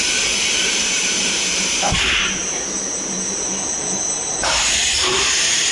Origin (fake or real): fake